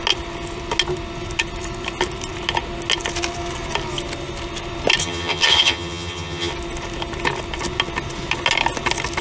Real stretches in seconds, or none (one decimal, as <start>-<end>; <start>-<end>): 0.0-5.0; 6.5-9.2

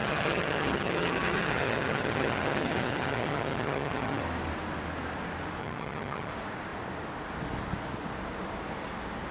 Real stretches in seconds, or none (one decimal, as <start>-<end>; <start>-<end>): 4.2-5.6; 6.3-9.3

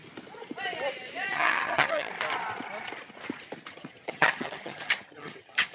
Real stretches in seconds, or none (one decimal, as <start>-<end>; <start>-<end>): 0.0-1.3; 2.1-3.7

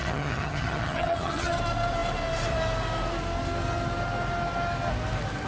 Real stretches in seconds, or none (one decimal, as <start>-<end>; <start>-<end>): 1.6-5.5